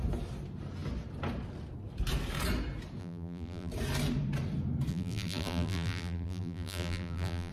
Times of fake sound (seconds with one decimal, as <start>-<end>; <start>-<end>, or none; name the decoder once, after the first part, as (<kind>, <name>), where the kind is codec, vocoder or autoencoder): 3.0-3.7 (vocoder, BigVGAN v2); 4.9-7.5